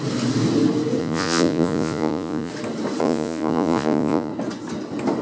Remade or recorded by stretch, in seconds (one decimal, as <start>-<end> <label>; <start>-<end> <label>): 0.0-1.0 recorded; 1.0-2.5 remade; 2.5-3.0 recorded; 3.0-4.3 remade; 4.3-5.2 recorded